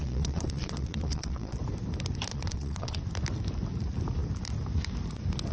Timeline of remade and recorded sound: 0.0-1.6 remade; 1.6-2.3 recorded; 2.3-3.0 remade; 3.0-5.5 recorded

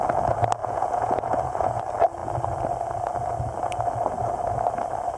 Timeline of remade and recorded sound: 0.0-0.6 recorded; 0.6-1.8 remade; 1.8-5.2 recorded